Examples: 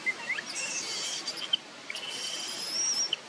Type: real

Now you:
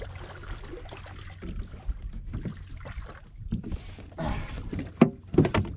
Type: real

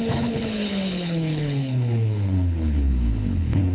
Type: fake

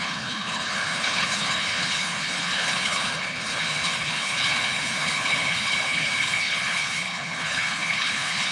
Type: fake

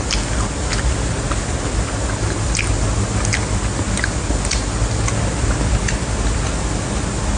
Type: real